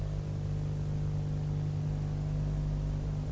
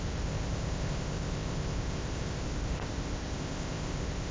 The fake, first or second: second